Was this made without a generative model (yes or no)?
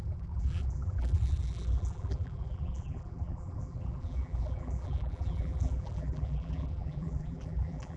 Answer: no